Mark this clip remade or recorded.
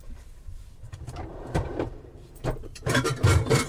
remade